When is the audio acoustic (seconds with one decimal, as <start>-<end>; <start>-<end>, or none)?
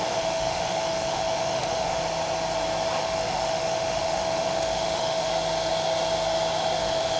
2.0-3.0; 5.3-6.8